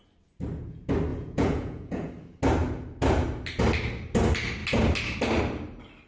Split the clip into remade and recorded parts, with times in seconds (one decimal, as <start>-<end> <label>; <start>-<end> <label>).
0.0-1.1 recorded; 1.1-2.1 remade; 2.1-6.1 recorded